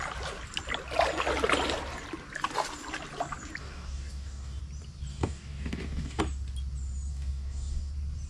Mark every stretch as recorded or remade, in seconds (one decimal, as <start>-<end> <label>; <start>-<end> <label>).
0.0-3.6 recorded; 3.6-4.6 remade; 4.6-5.1 recorded; 5.1-6.2 remade; 6.2-7.1 recorded; 7.1-7.9 remade; 7.9-8.3 recorded